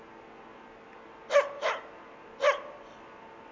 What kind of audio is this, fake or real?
real